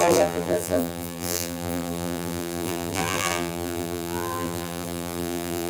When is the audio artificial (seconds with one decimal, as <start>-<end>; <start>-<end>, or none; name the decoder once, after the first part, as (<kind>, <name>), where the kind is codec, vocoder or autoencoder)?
0.0-5.7 (vocoder, BigVGAN v2)